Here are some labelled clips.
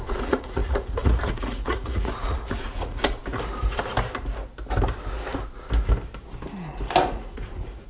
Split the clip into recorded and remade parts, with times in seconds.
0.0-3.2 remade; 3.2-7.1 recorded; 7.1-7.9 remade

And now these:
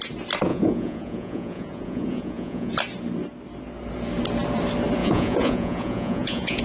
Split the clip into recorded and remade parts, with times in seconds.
0.0-0.5 recorded; 0.5-2.7 remade; 2.7-5.0 recorded; 5.0-6.6 remade

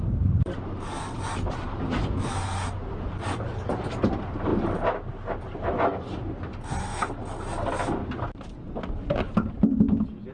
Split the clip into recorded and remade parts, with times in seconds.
0.0-10.3 recorded

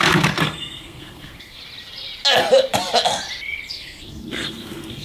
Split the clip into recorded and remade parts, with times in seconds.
0.0-1.6 remade; 1.6-3.7 recorded; 3.7-5.0 remade